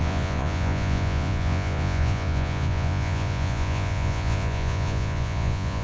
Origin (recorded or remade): remade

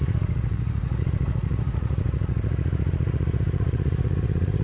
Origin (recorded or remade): remade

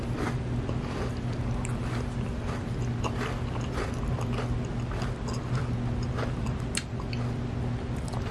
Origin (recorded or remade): recorded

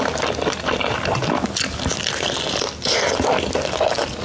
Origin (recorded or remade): recorded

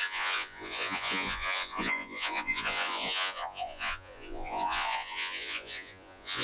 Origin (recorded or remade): remade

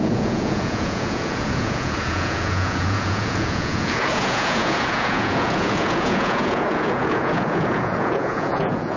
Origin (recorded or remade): remade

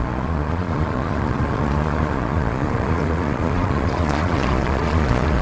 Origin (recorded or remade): remade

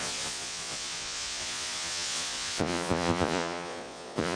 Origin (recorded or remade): remade